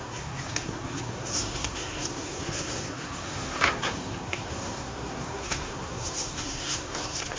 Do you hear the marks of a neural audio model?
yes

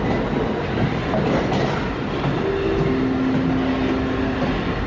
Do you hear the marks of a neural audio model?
no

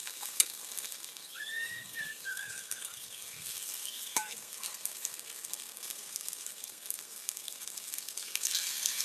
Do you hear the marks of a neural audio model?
yes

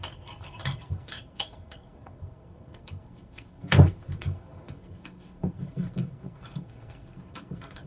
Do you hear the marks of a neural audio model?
yes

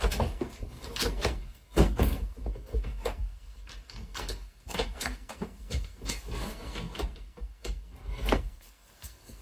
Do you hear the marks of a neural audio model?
yes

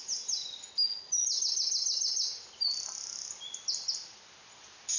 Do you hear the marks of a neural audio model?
no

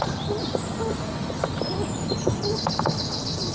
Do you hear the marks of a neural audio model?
no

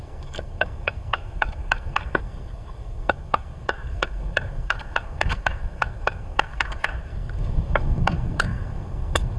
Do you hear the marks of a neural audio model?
yes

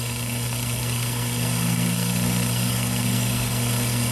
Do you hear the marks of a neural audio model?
yes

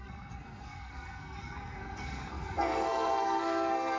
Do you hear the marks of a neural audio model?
yes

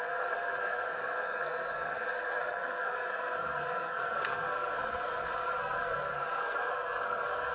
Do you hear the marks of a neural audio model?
yes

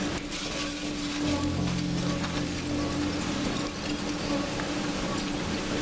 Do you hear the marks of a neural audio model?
no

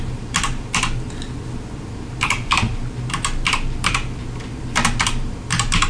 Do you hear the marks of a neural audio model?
no